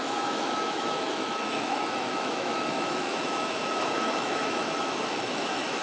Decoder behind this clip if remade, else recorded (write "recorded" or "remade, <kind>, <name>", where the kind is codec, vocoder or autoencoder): remade, autoencoder, DAC-VAE